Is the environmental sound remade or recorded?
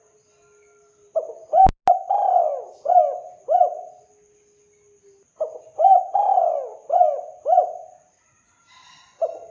recorded